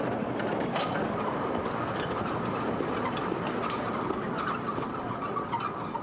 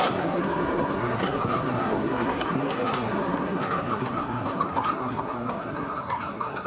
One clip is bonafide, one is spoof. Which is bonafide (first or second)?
first